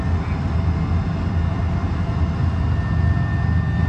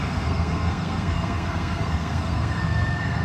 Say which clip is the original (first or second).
first